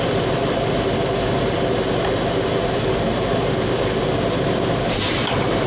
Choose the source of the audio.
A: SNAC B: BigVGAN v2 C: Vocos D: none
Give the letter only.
D